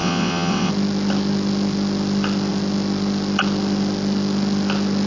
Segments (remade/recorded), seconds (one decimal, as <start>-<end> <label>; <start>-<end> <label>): 0.0-0.7 remade; 0.7-5.1 recorded